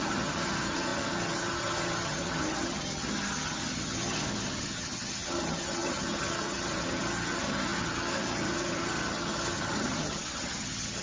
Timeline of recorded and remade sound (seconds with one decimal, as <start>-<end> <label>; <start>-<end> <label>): 0.0-11.0 remade